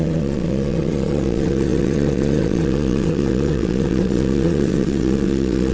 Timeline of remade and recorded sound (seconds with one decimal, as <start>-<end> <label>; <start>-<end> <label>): 0.0-5.7 remade